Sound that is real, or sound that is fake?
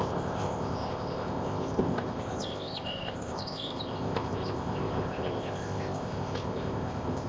fake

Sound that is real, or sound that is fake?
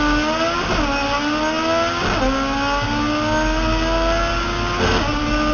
real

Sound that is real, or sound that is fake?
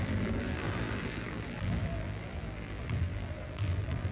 fake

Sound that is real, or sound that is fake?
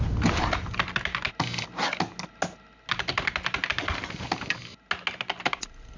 real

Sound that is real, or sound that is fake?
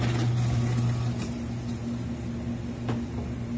real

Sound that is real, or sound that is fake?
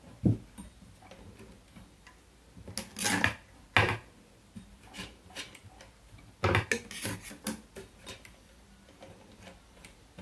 real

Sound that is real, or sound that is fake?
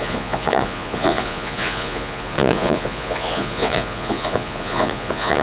fake